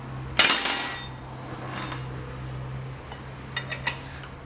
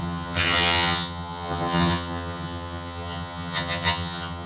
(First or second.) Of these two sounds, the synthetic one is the second